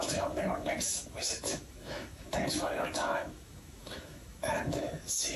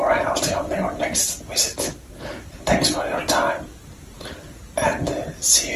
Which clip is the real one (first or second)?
second